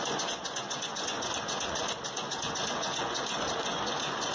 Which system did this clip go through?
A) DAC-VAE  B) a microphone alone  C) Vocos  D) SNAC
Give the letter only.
C